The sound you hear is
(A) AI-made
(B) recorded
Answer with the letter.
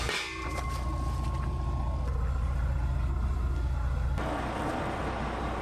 B